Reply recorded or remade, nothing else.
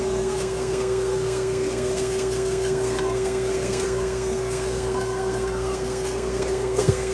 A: remade